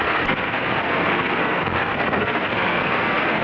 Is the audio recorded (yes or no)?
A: no